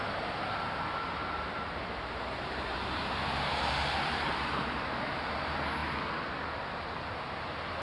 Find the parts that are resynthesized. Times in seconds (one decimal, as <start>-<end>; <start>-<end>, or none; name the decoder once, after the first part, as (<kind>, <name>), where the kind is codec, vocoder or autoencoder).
1.2-5.3 (vocoder, BigVGAN v2)